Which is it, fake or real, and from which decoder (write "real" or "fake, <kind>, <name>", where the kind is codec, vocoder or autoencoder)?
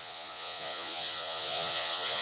fake, vocoder, Vocos